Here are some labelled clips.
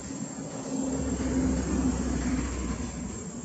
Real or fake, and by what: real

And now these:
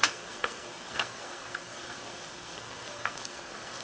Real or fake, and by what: fake, codec, SNAC